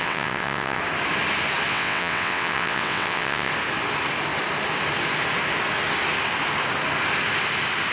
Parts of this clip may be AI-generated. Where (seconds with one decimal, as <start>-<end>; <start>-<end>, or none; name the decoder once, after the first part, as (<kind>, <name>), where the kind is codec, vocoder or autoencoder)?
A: 0.0-0.8 (vocoder, WaveNeXt); 1.7-3.5